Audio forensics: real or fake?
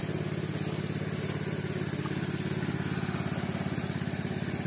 real